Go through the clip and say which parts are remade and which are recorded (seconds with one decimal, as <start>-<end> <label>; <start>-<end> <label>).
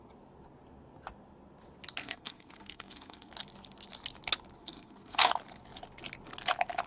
0.0-2.0 recorded; 2.0-3.3 remade; 3.3-4.6 recorded; 4.6-5.3 remade; 5.3-6.9 recorded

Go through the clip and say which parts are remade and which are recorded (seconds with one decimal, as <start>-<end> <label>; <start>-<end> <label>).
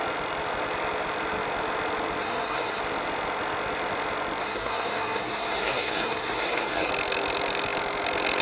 0.0-2.2 recorded; 2.2-2.8 remade; 2.8-4.4 recorded; 4.4-6.9 remade; 6.9-8.4 recorded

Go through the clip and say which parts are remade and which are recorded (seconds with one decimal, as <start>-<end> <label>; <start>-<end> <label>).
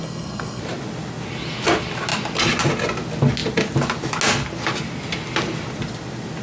0.0-0.6 remade; 0.6-6.4 recorded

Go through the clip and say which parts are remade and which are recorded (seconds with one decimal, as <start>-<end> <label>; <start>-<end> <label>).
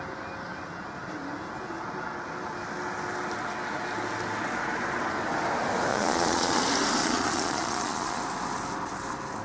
0.0-5.9 recorded; 5.9-6.6 remade; 6.6-7.0 recorded; 7.0-8.2 remade; 8.2-9.4 recorded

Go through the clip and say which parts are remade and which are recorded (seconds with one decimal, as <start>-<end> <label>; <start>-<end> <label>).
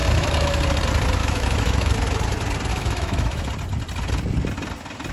0.0-0.6 remade; 0.6-1.2 recorded; 1.2-1.9 remade; 1.9-2.7 recorded; 2.7-3.5 remade; 3.5-5.1 recorded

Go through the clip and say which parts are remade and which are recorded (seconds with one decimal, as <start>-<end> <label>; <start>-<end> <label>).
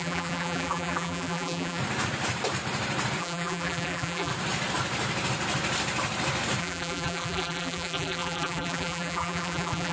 0.0-1.8 remade; 1.8-3.2 recorded; 3.2-4.3 remade; 4.3-6.6 recorded; 6.6-9.9 remade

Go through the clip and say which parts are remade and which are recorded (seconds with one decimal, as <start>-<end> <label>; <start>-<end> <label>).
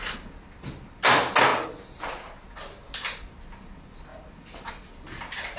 0.0-5.6 recorded